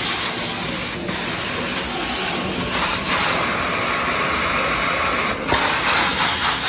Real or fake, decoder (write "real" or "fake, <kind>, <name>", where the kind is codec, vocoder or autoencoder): real